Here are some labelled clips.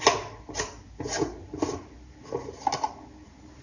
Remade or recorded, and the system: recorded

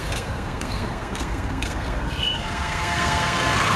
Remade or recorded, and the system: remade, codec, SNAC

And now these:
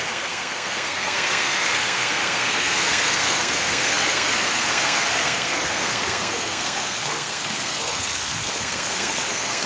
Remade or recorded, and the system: remade, codec, SNAC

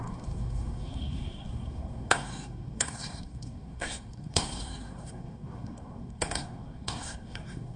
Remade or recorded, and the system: remade, codec, SNAC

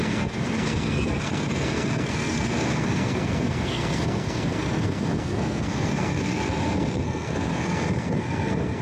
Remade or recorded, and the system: remade, codec, SNAC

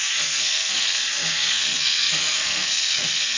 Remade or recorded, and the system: remade, codec, SNAC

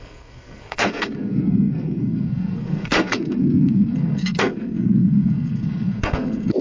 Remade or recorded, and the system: remade, codec, SNAC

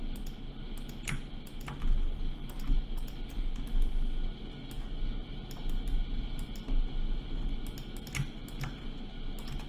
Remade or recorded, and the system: recorded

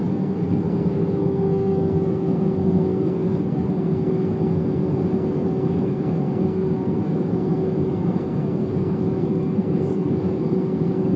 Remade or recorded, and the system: remade, codec, SNAC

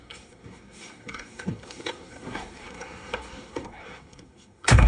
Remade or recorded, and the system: remade, codec, SNAC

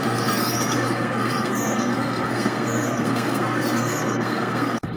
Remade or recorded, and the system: remade, codec, SNAC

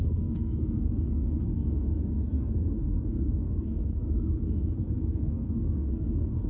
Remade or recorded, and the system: remade, codec, SNAC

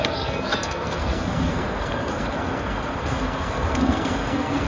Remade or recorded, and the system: remade, codec, SNAC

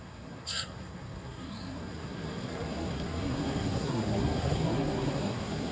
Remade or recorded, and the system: remade, codec, SNAC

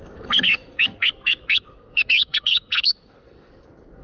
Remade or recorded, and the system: remade, codec, SNAC